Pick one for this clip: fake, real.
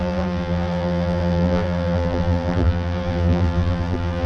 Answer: fake